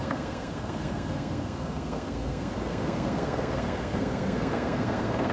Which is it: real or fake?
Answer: fake